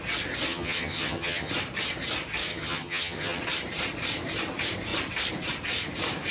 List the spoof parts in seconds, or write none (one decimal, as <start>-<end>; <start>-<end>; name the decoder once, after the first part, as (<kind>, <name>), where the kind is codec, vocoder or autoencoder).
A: 0.5-1.5 (vocoder, HiFi-GAN); 2.5-3.4